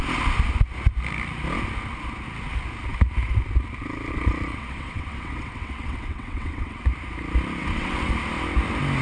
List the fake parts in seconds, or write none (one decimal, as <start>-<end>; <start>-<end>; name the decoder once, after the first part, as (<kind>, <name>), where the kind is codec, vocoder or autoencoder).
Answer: 4.5-6.8 (vocoder, WaveNeXt); 7.6-8.1